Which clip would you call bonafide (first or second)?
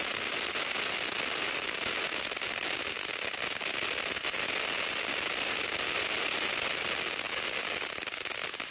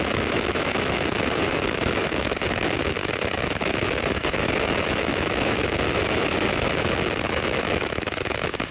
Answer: first